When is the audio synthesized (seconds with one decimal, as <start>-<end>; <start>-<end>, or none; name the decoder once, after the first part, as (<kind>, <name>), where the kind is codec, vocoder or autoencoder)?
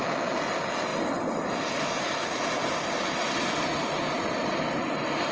none